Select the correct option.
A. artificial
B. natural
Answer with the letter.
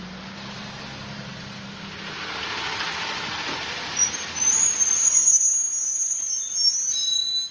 B